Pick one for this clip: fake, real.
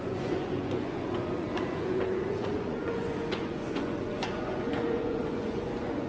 fake